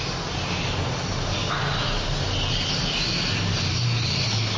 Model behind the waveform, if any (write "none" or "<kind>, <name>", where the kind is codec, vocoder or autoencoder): none